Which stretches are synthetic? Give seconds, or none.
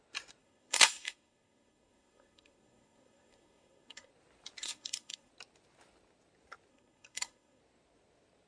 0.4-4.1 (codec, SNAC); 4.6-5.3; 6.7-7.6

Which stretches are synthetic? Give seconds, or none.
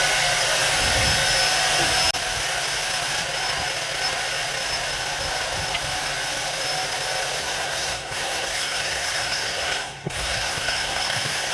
7.4-11.5 (codec, SNAC)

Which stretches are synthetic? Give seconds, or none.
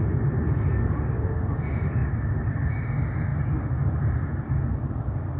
none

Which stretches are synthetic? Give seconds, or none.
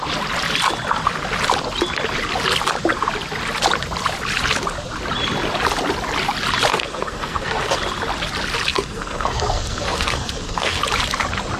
6.7-7.8 (codec, SNAC); 8.7-10.8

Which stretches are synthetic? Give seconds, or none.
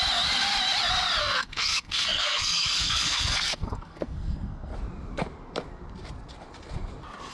1.2-4.7 (codec, SNAC)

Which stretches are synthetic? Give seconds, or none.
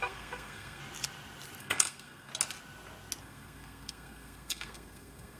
0.0-0.8 (codec, SNAC); 1.6-2.3; 3.2-5.4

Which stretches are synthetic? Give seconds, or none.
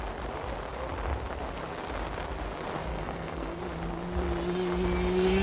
2.9-3.6 (codec, SNAC)